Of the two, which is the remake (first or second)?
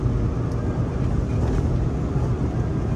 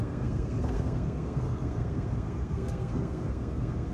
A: second